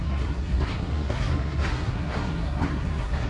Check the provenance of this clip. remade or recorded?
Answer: remade